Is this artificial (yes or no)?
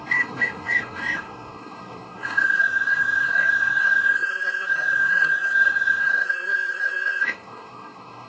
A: yes